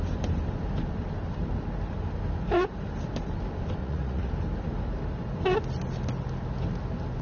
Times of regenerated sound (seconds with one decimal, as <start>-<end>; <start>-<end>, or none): 3.8-4.3